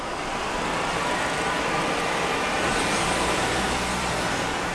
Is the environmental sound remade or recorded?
remade